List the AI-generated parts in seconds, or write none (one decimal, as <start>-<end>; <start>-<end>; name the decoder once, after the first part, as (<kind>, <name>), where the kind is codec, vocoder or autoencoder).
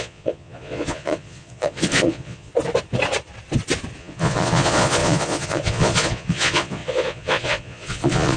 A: 0.0-2.5 (vocoder, Vocos); 4.0-8.4